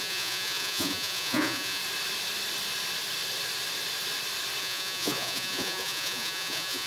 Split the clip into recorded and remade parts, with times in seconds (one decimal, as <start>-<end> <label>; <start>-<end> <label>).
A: 0.0-1.8 remade; 1.8-4.6 recorded; 4.6-6.9 remade